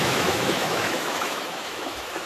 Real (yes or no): no